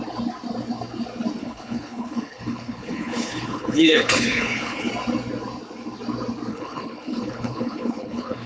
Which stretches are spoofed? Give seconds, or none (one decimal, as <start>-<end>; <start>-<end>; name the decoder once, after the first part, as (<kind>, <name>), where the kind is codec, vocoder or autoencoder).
1.4-4.9 (codec, HILCodec); 6.5-8.5

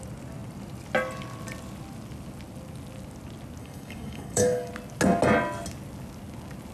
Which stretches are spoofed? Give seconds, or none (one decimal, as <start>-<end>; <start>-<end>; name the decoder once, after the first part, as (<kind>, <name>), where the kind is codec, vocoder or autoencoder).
3.6-4.7 (codec, DAC)